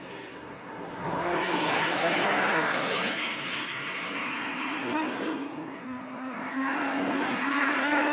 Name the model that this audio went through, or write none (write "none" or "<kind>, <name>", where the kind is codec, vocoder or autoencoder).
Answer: codec, SNAC